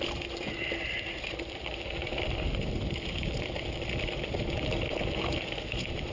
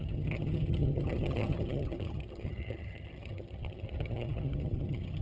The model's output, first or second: second